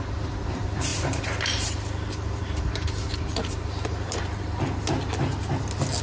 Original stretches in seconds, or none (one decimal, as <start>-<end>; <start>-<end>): 0.0-0.9; 4.5-6.0

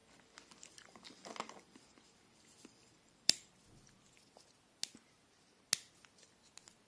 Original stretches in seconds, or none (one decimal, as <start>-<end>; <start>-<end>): 3.5-6.9

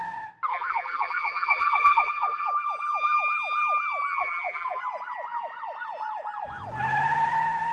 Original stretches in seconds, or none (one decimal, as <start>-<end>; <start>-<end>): 0.0-0.5; 2.5-4.1; 4.8-7.7